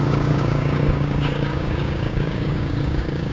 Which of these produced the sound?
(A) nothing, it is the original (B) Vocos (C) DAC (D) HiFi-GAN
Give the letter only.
C